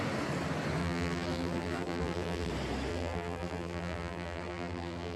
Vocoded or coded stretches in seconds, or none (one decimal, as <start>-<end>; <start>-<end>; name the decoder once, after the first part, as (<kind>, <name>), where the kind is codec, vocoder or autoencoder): 0.8-2.5 (vocoder, BigVGAN v2); 2.9-5.2